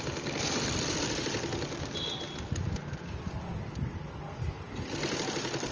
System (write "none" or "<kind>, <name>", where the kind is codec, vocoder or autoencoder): none